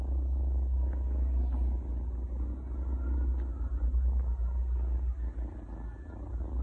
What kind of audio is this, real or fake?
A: real